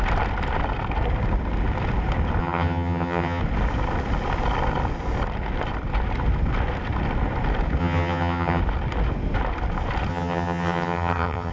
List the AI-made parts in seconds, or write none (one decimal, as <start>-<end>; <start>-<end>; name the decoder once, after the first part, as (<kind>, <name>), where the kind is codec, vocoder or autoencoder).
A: 2.4-3.4 (vocoder, HiFi-GAN); 7.8-8.6; 10.1-11.5